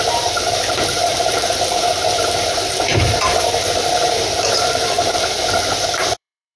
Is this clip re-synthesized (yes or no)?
yes